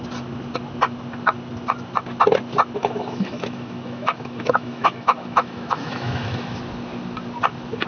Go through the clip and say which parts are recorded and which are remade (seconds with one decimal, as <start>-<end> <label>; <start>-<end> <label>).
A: 0.0-2.8 recorded; 2.8-6.6 remade; 6.6-7.9 recorded